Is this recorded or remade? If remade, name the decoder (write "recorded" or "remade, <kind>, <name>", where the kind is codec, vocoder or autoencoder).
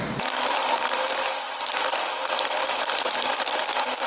recorded